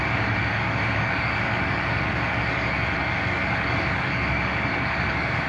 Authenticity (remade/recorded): remade